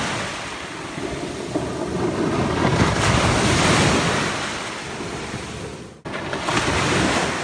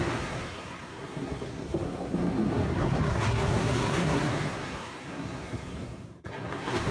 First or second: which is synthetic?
second